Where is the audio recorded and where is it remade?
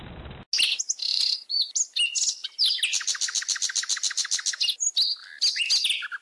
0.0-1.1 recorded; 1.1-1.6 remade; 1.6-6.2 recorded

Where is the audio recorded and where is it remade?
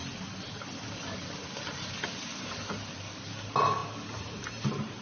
0.0-5.0 recorded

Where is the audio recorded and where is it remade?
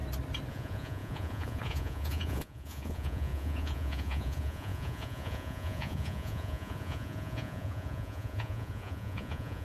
0.0-0.5 recorded; 0.5-9.6 remade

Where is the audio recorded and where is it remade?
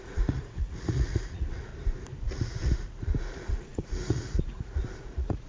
0.0-1.7 remade; 1.7-2.2 recorded; 2.2-5.5 remade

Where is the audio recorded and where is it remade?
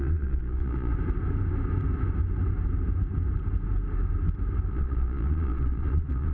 0.0-0.9 remade; 0.9-4.7 recorded; 4.7-6.3 remade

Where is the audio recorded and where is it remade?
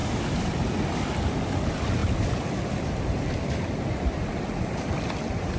0.0-5.6 recorded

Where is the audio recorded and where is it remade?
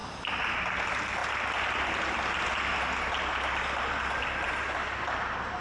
0.0-5.6 recorded